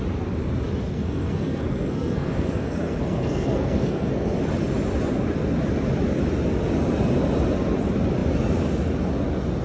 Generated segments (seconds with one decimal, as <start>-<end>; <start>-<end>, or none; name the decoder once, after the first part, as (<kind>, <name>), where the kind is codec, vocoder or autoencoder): 0.9-4.4 (codec, SNAC)